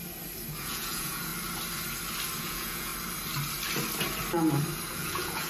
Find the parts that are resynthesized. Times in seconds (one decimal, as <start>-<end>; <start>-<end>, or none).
0.5-1.3; 2.4-2.9; 4.9-5.5